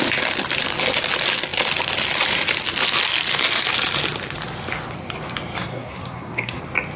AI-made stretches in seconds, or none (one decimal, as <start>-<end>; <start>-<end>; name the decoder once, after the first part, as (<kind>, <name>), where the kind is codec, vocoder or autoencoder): 5.6-6.6 (codec, SNAC)